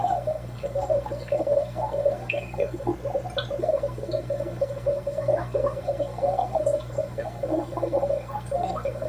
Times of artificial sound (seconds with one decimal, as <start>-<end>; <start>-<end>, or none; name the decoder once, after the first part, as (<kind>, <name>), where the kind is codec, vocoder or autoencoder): 0.0-2.9 (codec, SNAC); 3.6-9.1